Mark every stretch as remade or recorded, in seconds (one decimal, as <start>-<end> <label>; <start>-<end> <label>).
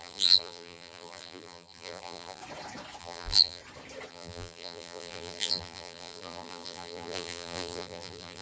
0.0-2.4 remade; 2.4-3.0 recorded; 3.0-3.6 remade; 3.6-4.1 recorded; 4.1-8.4 remade